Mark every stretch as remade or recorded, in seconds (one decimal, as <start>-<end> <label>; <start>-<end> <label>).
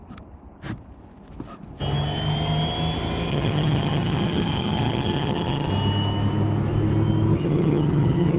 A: 0.0-3.3 recorded; 3.3-5.7 remade; 5.7-7.4 recorded; 7.4-8.4 remade